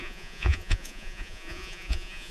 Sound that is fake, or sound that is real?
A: fake